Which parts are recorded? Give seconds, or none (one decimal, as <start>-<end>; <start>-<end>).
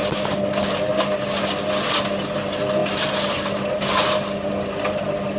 0.0-5.4